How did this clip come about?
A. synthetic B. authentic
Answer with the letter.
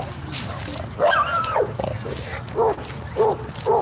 B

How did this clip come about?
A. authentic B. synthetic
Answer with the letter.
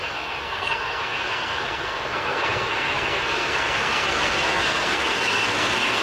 B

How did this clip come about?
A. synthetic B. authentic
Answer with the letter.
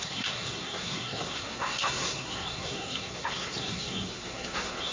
A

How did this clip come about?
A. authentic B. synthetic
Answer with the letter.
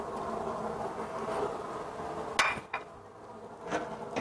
A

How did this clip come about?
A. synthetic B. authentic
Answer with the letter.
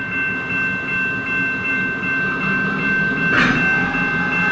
B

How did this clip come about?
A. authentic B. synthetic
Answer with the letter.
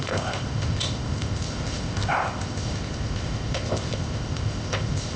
B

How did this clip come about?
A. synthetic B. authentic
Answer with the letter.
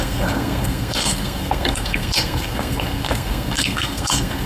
A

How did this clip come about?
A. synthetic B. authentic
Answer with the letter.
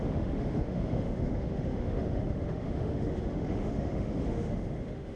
A